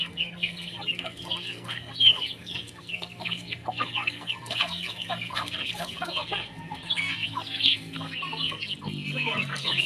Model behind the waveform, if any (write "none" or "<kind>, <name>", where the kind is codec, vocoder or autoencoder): codec, SNAC